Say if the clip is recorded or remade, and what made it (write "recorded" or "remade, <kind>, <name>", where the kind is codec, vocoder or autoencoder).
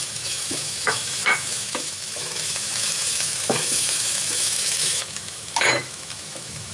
remade, autoencoder, DAC-VAE